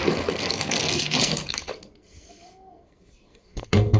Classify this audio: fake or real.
fake